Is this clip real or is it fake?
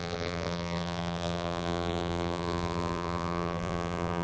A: fake